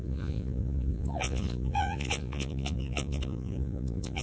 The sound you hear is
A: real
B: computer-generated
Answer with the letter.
B